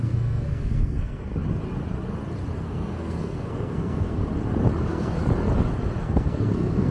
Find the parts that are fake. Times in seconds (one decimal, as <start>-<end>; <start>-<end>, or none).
0.0-1.3; 2.6-4.2; 4.8-5.2; 6.0-6.9